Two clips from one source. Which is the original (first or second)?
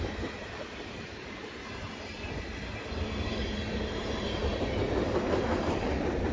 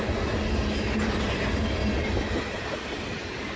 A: second